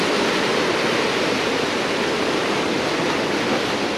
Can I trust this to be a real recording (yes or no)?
yes